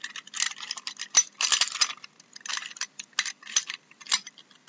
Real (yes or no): yes